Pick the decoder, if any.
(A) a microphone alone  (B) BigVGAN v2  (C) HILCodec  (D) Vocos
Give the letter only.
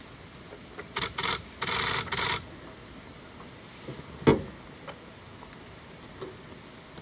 A